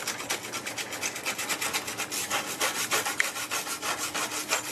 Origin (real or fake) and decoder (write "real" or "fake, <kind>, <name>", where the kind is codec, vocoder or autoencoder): real